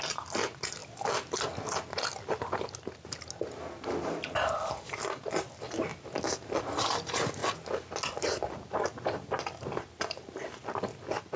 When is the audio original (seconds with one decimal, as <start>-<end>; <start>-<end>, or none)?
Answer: 0.0-11.4